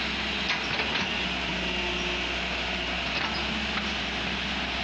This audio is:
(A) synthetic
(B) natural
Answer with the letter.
B